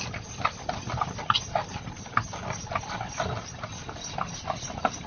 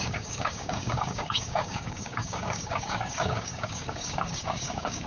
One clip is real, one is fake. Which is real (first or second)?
first